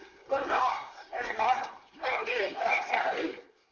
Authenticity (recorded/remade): remade